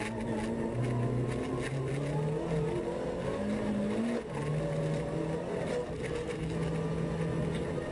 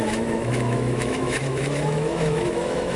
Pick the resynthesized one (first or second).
second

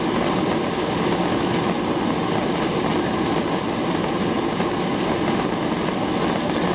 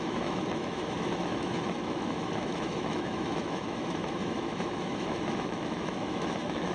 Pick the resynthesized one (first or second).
second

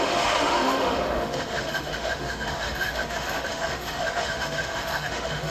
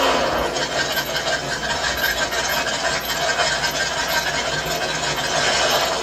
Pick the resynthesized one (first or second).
first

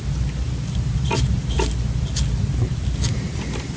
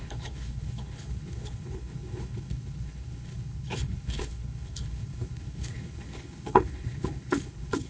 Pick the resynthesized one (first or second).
second